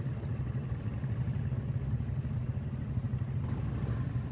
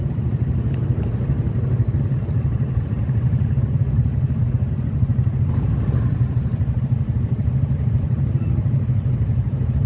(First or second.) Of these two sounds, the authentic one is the first